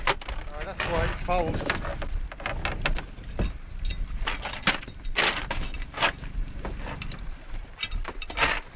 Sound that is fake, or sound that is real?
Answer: real